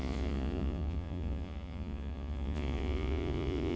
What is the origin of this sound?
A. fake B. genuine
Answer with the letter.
A